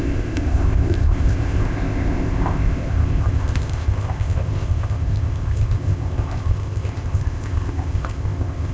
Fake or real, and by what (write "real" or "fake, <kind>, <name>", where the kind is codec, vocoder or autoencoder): fake, codec, ZipCodec